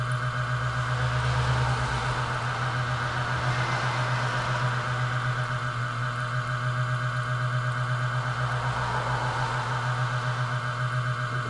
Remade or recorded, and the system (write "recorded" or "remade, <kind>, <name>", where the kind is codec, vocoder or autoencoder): recorded